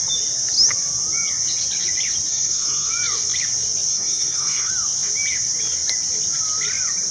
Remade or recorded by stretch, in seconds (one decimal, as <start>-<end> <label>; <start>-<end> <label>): 0.0-2.3 recorded; 2.3-2.9 remade; 2.9-3.9 recorded; 3.9-4.7 remade; 4.7-7.1 recorded